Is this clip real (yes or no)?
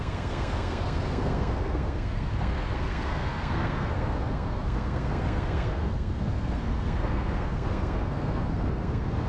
no